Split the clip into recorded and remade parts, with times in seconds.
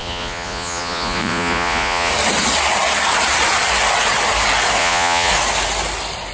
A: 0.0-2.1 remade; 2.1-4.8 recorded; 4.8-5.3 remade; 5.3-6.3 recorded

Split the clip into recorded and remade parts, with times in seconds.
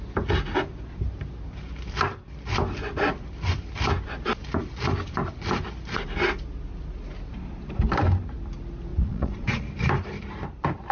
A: 0.0-8.9 recorded; 8.9-9.6 remade; 9.6-10.9 recorded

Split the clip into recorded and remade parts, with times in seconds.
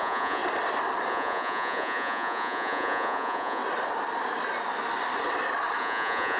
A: 0.0-0.4 remade; 0.4-1.1 recorded; 1.1-3.6 remade; 3.6-5.8 recorded; 5.8-6.4 remade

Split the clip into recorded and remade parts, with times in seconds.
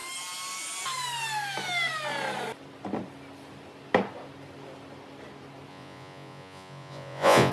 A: 0.0-5.7 recorded; 5.7-7.5 remade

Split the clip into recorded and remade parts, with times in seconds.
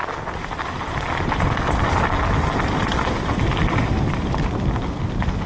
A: 0.0-5.5 recorded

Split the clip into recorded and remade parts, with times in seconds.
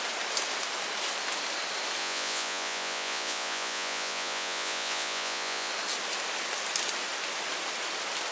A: 0.0-2.0 recorded; 2.0-5.7 remade; 5.7-8.3 recorded